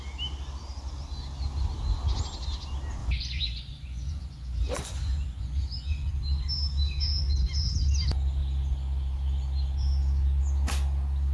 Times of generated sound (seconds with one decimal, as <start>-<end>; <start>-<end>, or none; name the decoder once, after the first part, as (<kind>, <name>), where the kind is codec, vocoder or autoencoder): 3.0-6.1 (vocoder, Vocos)